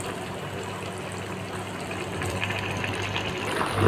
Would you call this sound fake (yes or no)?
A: no